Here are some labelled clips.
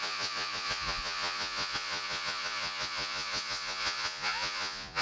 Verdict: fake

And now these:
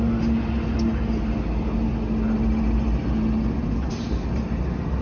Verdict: real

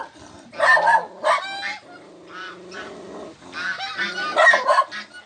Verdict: real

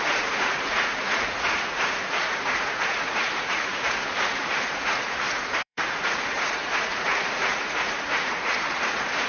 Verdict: fake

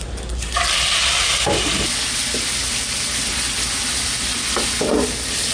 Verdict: real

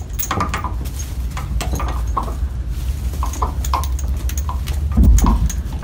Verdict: real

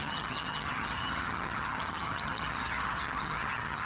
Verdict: fake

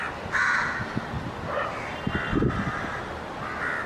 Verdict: real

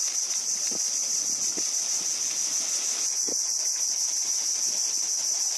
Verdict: real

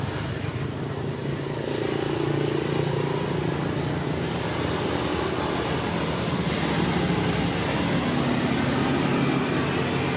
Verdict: real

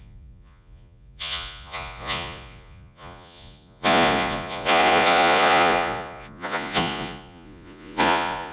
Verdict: fake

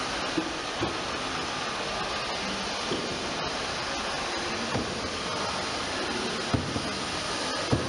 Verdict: real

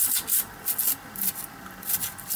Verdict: real